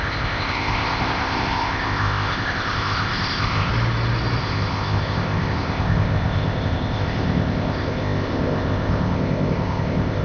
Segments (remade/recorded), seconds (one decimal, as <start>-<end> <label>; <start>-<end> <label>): 0.0-3.7 remade; 3.7-4.4 recorded; 4.4-10.2 remade